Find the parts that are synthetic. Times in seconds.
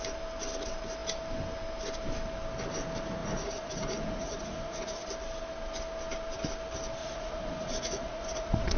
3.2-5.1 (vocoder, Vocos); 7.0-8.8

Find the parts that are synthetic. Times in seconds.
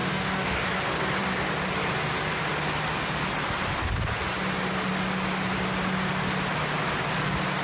0.0-0.7 (codec, DAC)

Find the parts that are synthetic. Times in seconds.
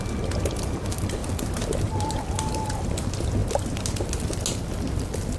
none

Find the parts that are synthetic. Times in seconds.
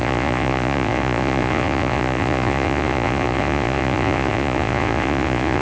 0.0-5.6 (vocoder, Vocos)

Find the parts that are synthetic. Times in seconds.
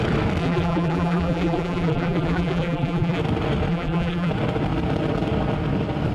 0.4-3.2 (vocoder, BigVGAN v2); 3.7-4.3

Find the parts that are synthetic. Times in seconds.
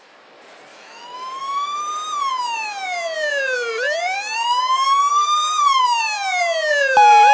0.7-1.8 (autoencoder, DAC-VAE); 5.2-5.8